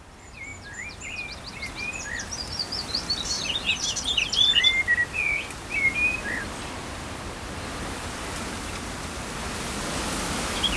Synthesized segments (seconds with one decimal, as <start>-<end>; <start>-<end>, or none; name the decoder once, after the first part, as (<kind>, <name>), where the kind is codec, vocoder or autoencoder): none